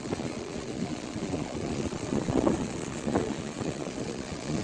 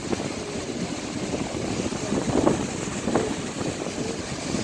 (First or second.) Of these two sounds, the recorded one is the second